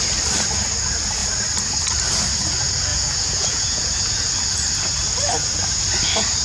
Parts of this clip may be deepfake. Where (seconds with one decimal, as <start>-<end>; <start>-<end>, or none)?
2.9-4.3

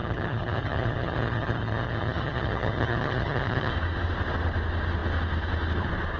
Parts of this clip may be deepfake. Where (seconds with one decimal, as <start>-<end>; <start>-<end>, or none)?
0.0-3.7

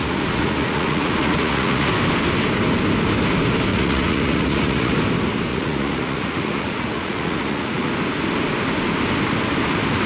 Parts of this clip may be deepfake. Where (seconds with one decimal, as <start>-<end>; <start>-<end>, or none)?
0.0-1.9; 3.7-4.9; 5.5-7.9

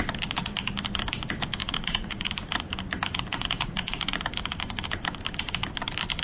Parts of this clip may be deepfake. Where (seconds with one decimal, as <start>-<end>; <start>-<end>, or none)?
1.6-2.3; 3.3-4.2

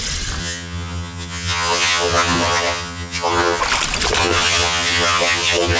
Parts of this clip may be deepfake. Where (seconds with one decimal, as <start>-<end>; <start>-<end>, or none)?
0.4-3.6; 4.2-5.8

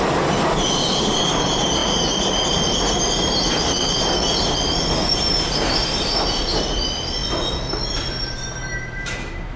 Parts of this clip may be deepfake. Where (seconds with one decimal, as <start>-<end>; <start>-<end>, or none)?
none